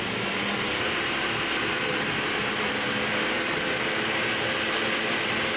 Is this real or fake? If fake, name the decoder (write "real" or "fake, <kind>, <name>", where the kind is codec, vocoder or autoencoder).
real